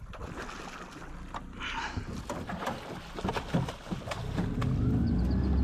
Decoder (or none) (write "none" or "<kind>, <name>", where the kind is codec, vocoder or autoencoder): none